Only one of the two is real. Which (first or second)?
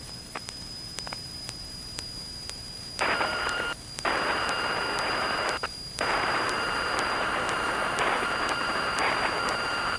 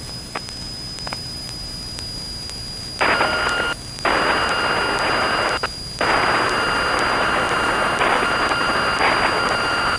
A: second